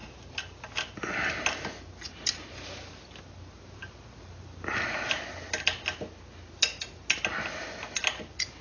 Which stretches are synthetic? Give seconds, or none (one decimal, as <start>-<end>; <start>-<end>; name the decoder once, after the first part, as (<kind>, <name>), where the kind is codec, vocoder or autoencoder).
none